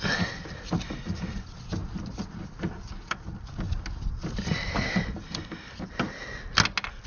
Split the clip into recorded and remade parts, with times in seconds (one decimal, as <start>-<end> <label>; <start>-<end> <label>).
0.0-7.1 recorded